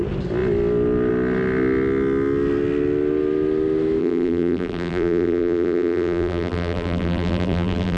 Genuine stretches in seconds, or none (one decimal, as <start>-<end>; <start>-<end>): 0.0-4.0